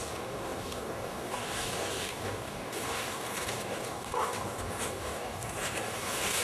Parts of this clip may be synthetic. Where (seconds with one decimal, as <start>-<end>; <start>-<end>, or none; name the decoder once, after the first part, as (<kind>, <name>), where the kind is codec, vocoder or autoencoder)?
0.0-6.4 (codec, DAC)